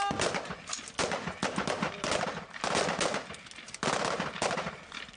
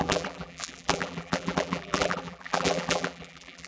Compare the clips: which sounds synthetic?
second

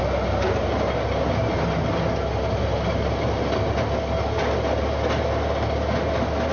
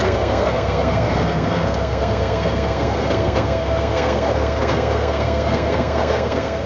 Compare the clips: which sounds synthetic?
second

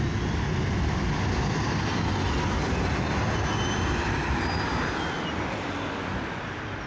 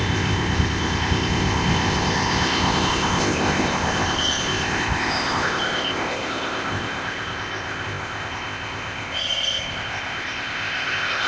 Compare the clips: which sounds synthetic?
second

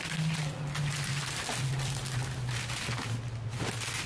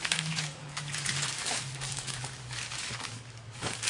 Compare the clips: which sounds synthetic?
second